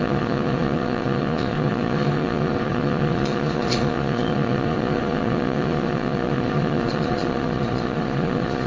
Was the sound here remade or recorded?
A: remade